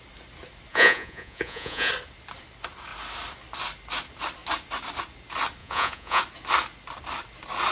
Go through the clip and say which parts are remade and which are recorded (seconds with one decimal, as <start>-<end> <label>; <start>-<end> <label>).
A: 0.0-0.7 recorded; 0.7-1.9 remade; 1.9-5.6 recorded; 5.6-6.2 remade; 6.2-7.7 recorded